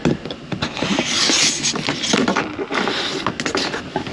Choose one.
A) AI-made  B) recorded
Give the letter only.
B